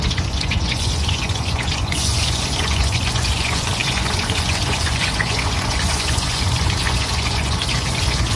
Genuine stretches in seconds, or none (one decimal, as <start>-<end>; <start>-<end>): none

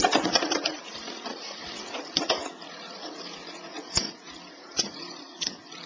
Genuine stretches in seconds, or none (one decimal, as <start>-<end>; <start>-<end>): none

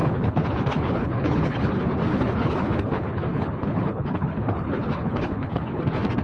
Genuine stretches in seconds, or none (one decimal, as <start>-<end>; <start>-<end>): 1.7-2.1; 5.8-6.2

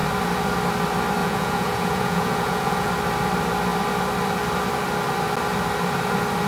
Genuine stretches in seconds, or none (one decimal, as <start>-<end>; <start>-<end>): 0.0-1.2; 2.9-6.5

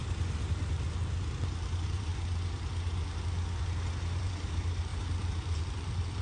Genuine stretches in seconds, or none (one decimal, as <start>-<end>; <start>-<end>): 2.1-4.0

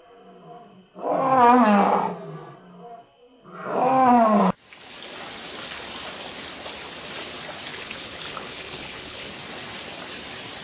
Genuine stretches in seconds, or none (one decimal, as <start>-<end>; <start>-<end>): 0.0-7.7; 9.3-10.6

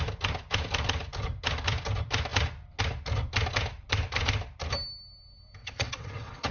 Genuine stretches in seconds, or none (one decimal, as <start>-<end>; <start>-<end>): 0.0-5.6